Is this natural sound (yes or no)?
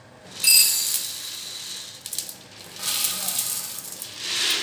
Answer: yes